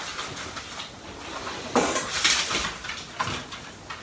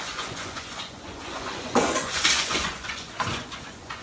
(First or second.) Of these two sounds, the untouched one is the first